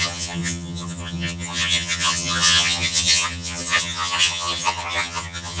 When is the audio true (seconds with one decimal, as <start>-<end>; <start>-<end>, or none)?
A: none